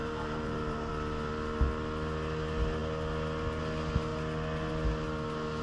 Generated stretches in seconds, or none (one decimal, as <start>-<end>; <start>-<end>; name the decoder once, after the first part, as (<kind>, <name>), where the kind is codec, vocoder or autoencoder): 0.0-0.9 (vocoder, BigVGAN v2)

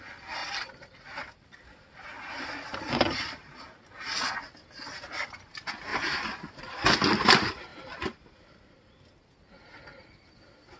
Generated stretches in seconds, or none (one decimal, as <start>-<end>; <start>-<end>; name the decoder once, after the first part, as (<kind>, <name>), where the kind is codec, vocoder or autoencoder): 0.4-3.6 (vocoder, BigVGAN v2); 5.9-6.9

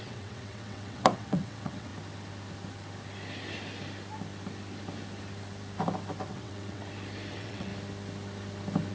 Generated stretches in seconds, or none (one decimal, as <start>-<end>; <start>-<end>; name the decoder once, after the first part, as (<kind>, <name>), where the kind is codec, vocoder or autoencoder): 0.0-1.9 (vocoder, WaveNeXt); 6.3-6.8; 7.3-7.7

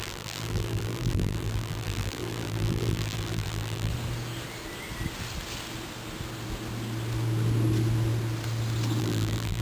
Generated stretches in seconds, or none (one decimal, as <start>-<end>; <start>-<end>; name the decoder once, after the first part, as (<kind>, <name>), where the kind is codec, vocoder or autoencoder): 0.0-3.9 (vocoder, BigVGAN v2); 9.0-9.6

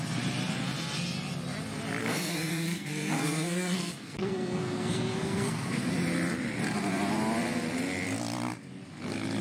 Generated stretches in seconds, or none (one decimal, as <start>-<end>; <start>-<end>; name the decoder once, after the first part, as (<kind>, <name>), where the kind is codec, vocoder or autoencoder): 2.0-5.9 (codec, SNAC)

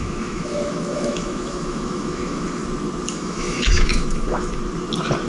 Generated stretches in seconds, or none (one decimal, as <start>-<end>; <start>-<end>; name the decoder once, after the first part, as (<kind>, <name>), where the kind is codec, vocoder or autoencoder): 0.0-2.6 (autoencoder, DAC-VAE); 3.1-4.6

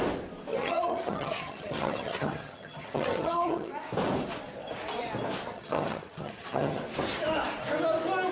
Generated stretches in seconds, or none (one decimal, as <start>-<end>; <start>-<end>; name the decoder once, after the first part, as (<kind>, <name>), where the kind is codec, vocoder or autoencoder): 0.5-3.7 (vocoder, HiFi-GAN); 5.5-6.8